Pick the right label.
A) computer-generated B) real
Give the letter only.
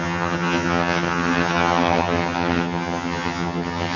A